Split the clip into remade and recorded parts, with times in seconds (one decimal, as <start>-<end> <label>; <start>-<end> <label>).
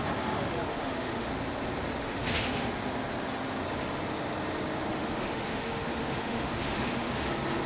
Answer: 0.0-0.7 recorded; 0.7-1.3 remade; 1.3-2.0 recorded; 2.0-2.7 remade; 2.7-4.9 recorded; 4.9-7.3 remade; 7.3-7.7 recorded